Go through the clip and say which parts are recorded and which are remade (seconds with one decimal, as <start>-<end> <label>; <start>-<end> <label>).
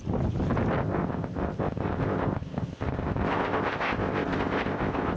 0.0-0.8 recorded; 0.8-5.2 remade